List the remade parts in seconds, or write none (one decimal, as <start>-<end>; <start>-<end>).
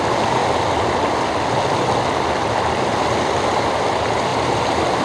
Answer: none